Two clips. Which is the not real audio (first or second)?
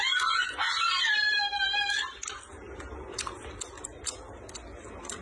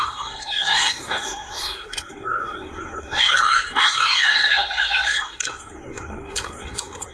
second